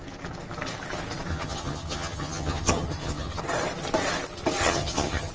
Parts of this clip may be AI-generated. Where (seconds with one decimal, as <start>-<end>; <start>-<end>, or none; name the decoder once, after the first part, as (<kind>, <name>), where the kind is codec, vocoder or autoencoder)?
1.3-3.4 (vocoder, HiFi-GAN); 4.6-5.3